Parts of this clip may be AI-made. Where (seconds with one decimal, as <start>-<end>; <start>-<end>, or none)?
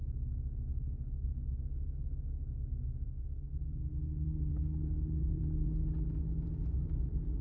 0.7-1.6; 4.5-5.4